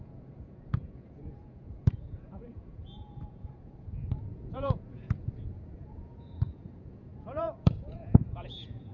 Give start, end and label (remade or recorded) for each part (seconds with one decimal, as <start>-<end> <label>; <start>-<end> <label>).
0.0-8.9 remade